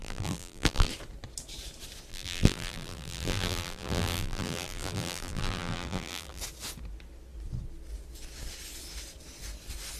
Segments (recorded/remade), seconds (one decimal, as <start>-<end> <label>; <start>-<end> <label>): 0.0-0.9 remade; 0.9-2.1 recorded; 2.1-6.4 remade; 6.4-10.0 recorded